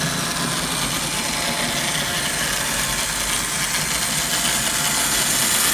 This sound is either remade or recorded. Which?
recorded